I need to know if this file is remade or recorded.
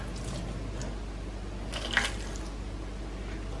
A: recorded